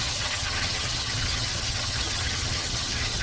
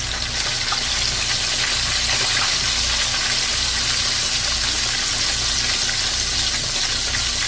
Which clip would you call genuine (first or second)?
second